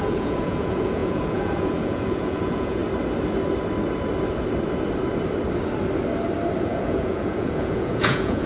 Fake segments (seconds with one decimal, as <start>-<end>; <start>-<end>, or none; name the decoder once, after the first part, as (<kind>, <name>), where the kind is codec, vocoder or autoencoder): 0.0-2.8 (vocoder, Vocos); 6.6-8.5

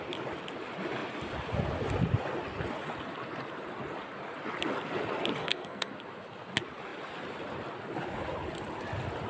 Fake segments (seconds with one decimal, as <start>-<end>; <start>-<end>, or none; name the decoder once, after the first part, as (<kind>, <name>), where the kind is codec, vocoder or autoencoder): 5.4-5.9 (codec, SNAC)

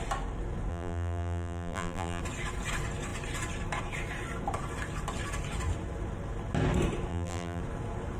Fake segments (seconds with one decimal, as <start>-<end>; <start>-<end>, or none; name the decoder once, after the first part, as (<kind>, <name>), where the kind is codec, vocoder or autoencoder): 0.7-2.2 (vocoder, BigVGAN v2); 7.1-7.6

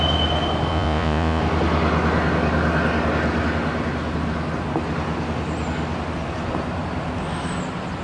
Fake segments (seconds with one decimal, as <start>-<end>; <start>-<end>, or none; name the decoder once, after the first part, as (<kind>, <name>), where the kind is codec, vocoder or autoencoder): 0.7-1.4 (vocoder, Vocos)

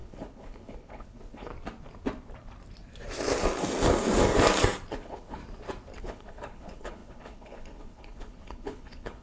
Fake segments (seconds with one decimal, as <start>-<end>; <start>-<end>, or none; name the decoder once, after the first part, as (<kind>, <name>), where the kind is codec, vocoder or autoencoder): 0.0-1.5 (codec, HILCodec); 4.9-5.4; 6.0-9.2

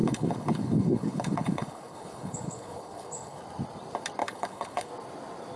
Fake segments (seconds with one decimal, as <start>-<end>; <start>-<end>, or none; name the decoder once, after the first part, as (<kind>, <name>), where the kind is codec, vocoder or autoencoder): 0.0-3.4 (codec, HILCodec); 4.2-4.9

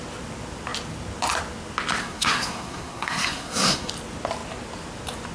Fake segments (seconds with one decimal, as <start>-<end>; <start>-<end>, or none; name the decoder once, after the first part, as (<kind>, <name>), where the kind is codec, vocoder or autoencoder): 2.0-3.9 (codec, SNAC)